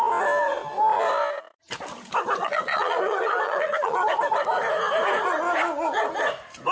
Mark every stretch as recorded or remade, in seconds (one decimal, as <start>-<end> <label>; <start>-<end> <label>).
0.0-2.4 recorded; 2.4-4.1 remade; 4.1-6.7 recorded